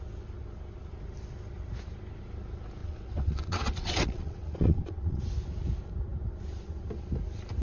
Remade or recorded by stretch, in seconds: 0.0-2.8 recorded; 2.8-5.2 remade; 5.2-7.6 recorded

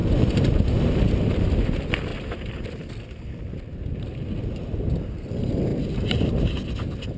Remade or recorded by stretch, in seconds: 0.0-1.2 remade; 1.2-5.7 recorded; 5.7-6.6 remade; 6.6-7.2 recorded

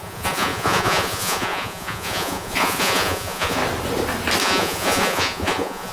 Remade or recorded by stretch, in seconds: 0.0-3.6 remade; 3.6-4.4 recorded; 4.4-5.9 remade

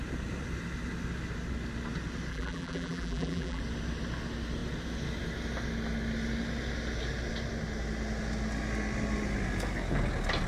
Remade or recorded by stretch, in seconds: 0.0-2.3 recorded; 2.3-3.6 remade; 3.6-10.5 recorded

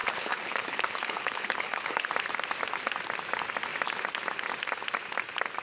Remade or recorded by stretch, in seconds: 0.0-2.1 remade; 2.1-5.6 recorded